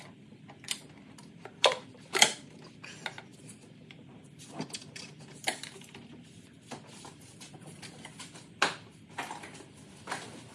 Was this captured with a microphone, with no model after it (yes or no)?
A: no